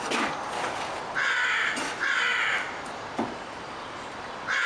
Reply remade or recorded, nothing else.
remade